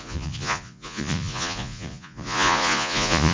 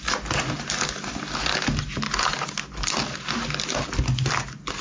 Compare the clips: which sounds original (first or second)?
second